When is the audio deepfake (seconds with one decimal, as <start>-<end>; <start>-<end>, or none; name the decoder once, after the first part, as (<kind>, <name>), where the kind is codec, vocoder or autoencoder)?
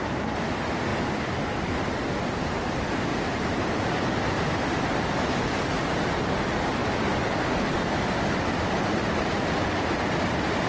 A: 3.1-5.0 (vocoder, BigVGAN v2)